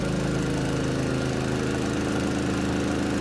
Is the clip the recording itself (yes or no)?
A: yes